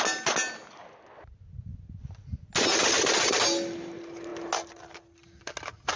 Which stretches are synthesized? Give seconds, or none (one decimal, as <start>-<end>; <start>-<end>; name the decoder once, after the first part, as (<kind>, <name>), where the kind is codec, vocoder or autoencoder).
none